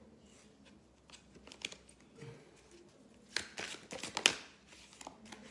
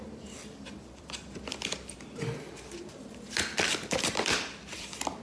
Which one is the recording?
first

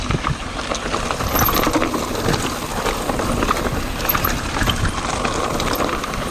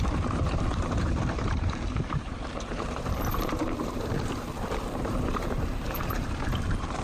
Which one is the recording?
first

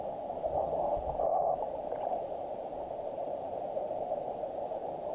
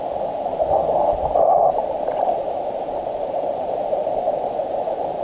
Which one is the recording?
first